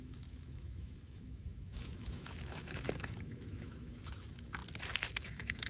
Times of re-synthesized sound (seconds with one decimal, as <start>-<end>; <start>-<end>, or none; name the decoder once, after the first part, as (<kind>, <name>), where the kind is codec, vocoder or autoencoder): 0.0-4.6 (autoencoder, DAC-VAE); 5.1-5.7

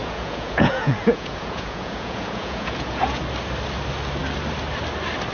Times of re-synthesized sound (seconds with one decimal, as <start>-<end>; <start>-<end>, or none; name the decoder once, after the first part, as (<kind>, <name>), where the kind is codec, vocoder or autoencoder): 0.0-3.2 (vocoder, Vocos)

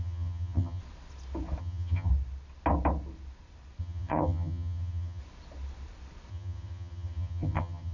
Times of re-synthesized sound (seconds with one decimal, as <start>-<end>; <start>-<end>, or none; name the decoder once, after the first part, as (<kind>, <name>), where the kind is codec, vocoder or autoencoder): 0.0-0.8 (vocoder, HiFi-GAN); 1.6-2.1; 3.8-5.2; 6.3-7.9

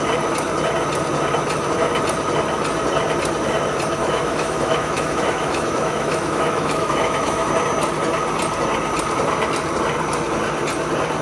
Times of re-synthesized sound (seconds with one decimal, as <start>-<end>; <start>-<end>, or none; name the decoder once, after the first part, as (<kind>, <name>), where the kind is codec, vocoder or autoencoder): 4.0-7.5 (autoencoder, DAC-VAE)

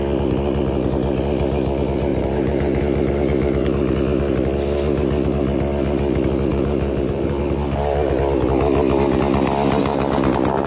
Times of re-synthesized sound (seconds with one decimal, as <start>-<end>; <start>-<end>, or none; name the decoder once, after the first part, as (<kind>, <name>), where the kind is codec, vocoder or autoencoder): 2.1-2.8 (vocoder, BigVGAN v2); 6.5-7.4; 9.8-10.7

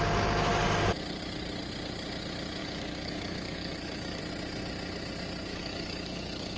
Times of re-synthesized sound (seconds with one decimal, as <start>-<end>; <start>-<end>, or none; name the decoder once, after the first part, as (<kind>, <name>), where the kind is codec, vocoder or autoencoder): 2.6-4.2 (codec, DAC); 5.5-6.6

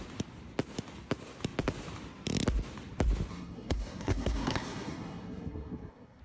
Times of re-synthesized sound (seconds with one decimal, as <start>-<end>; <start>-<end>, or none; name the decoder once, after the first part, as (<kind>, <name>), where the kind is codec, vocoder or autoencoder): 3.3-6.2 (codec, SNAC)

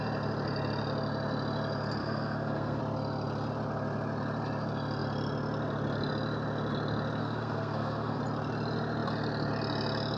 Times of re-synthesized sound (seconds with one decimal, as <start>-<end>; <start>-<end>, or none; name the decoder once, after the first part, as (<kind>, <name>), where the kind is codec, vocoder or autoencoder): 2.0-2.8 (codec, SNAC); 7.2-8.2